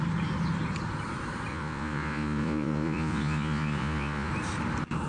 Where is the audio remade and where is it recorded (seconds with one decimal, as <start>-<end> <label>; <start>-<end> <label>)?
0.0-1.5 recorded; 1.5-4.3 remade; 4.3-5.1 recorded